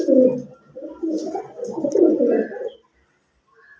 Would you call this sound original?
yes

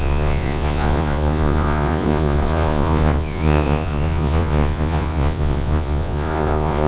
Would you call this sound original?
no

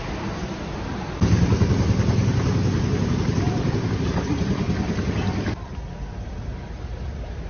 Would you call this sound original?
yes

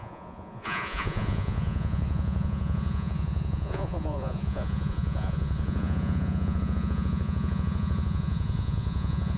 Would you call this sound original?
no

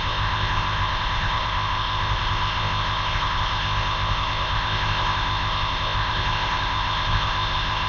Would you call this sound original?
no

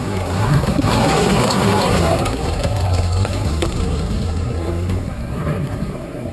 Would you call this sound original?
no